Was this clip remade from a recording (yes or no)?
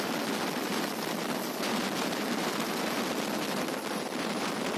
yes